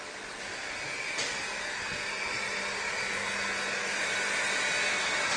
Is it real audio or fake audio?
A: real